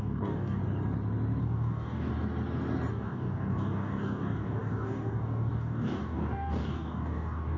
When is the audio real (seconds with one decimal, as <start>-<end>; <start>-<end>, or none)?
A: 0.6-1.4; 2.1-2.9